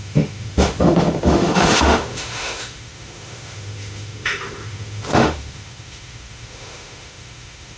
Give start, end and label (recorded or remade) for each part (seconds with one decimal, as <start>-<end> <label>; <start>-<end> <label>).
0.0-7.8 remade

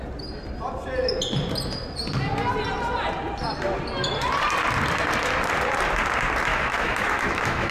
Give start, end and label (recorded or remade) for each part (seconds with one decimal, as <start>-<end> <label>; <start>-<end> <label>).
0.0-6.5 recorded; 6.5-7.7 remade

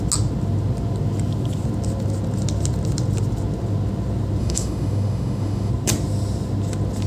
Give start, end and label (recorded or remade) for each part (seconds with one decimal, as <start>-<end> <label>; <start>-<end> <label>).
0.0-4.4 recorded; 4.4-5.7 remade; 5.7-7.1 recorded